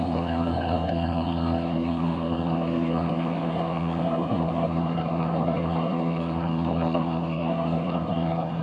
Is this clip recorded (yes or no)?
no